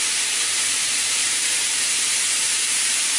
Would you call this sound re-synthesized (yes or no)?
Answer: yes